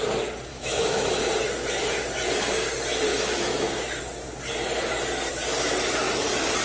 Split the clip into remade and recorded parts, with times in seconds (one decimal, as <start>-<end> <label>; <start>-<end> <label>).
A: 0.0-0.5 recorded; 0.5-1.3 remade; 1.3-3.1 recorded; 3.1-4.0 remade; 4.0-6.6 recorded